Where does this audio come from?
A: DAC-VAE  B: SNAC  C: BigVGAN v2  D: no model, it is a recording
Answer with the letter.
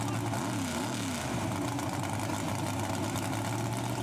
D